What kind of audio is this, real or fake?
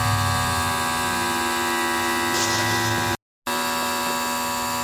real